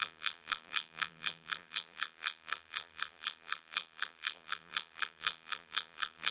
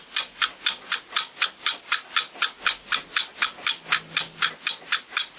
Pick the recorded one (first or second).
second